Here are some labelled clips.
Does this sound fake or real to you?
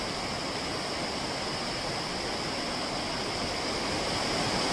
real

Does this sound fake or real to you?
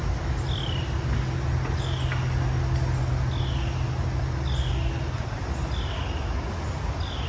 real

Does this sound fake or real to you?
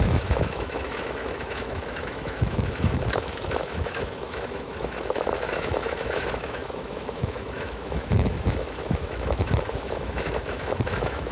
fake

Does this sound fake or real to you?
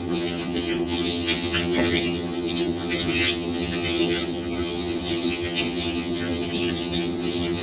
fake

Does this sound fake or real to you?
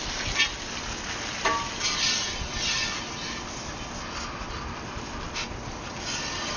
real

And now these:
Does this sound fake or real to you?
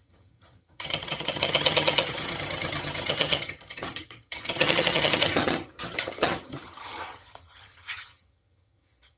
fake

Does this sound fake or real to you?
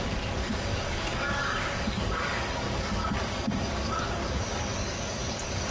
fake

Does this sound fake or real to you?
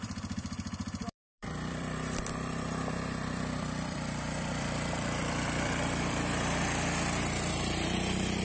fake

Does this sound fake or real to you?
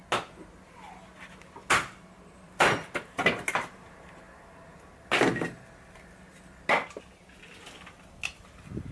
real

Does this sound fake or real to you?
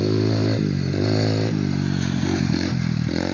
fake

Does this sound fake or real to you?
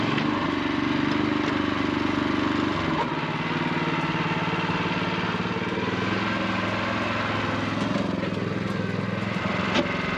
real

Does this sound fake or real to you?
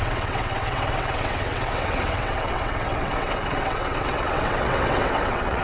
fake